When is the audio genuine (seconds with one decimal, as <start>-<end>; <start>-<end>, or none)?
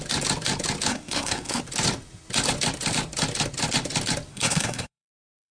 0.0-0.9; 1.6-4.3